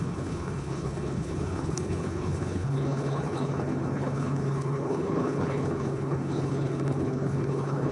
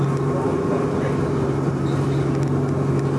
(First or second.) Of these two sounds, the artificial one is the first